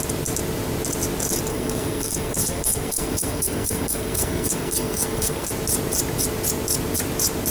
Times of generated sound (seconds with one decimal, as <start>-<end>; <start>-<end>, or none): 1.5-5.5